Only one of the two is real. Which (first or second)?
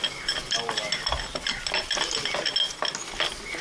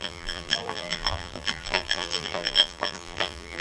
first